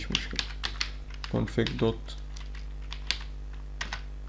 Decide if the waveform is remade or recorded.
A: recorded